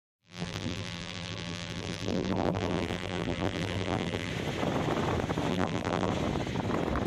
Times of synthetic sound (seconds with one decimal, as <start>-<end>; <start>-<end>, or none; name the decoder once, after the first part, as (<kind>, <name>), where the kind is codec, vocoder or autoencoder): 0.0-4.3 (vocoder, BigVGAN v2); 5.5-6.1